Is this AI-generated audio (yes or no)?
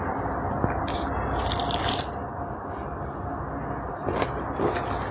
no